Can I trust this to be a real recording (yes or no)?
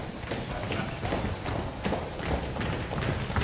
yes